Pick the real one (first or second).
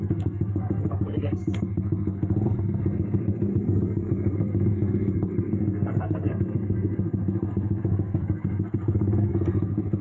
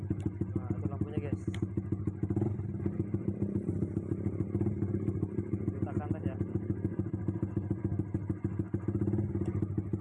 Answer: second